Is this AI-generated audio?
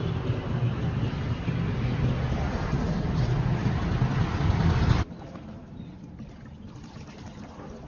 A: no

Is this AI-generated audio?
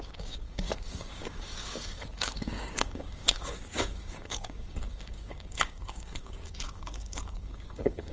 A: yes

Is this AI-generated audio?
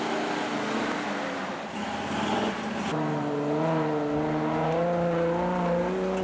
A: no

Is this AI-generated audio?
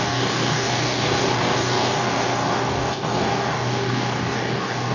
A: yes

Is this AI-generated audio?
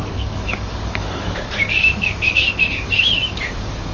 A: yes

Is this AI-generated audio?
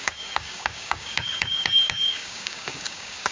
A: yes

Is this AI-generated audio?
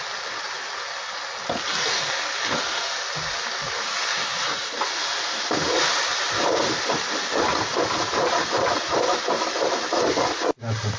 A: no